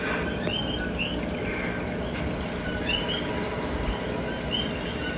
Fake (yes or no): no